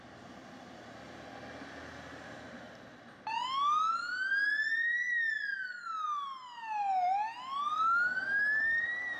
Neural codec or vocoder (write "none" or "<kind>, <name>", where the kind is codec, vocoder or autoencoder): none